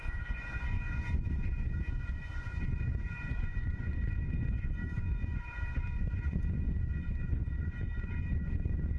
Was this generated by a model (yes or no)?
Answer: yes